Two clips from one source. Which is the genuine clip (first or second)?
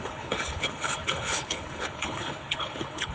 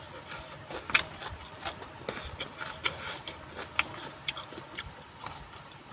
second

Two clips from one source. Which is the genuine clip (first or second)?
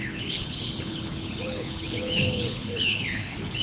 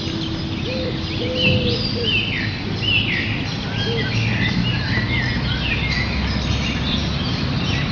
second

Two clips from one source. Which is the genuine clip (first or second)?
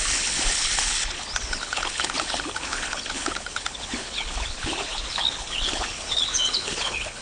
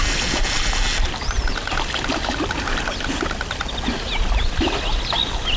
second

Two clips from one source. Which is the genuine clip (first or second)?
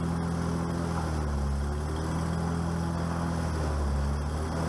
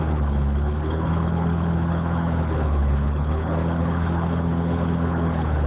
first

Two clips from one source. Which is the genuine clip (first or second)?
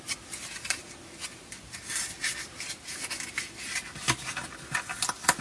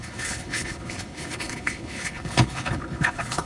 first